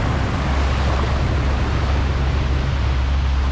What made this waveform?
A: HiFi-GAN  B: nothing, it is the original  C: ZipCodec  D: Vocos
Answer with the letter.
B